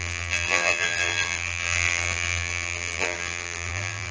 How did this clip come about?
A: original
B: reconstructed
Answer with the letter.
B